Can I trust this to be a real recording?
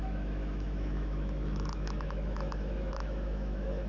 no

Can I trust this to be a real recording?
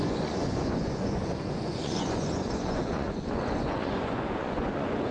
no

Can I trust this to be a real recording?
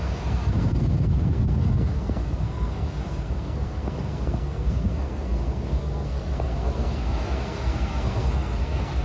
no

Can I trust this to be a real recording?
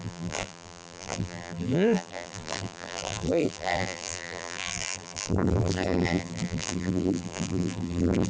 no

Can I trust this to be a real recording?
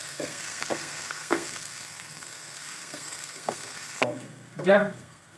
no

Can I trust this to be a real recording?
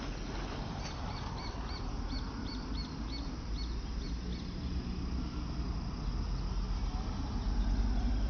yes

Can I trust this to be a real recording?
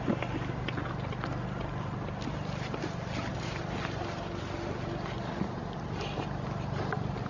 yes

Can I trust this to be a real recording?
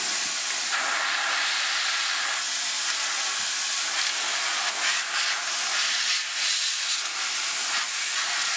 no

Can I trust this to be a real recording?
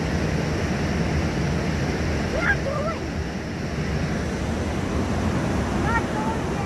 yes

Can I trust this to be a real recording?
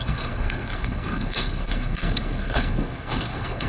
no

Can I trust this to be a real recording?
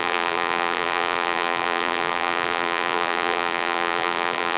no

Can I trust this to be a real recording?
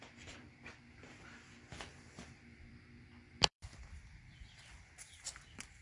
no